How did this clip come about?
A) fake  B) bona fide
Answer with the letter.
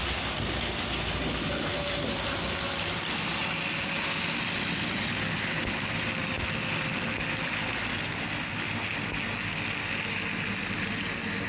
B